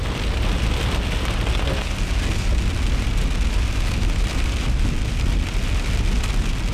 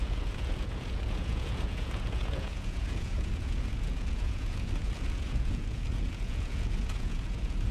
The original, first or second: first